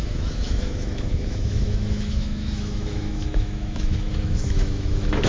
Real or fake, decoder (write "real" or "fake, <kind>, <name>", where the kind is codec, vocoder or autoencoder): fake, autoencoder, DAC-VAE